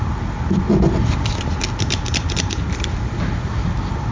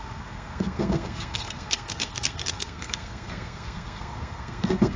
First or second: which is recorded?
first